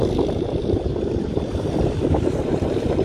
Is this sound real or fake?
fake